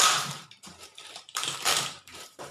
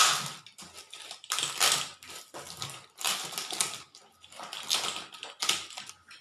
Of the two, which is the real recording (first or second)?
second